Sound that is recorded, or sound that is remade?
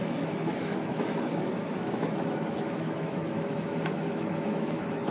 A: remade